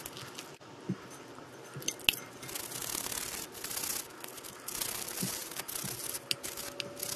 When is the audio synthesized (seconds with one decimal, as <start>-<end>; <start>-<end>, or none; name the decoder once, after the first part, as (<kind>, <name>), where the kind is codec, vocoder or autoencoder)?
none